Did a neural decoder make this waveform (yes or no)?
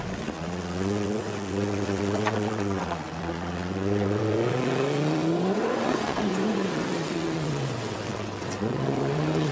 yes